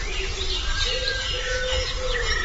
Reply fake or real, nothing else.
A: real